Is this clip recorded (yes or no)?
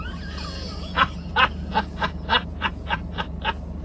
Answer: no